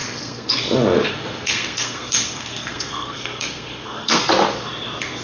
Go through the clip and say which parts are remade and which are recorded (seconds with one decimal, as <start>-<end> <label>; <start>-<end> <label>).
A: 0.0-0.6 remade; 0.6-1.1 recorded; 1.1-4.2 remade; 4.2-5.2 recorded